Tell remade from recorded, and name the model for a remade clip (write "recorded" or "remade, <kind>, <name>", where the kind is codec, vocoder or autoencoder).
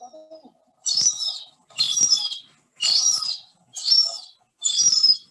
recorded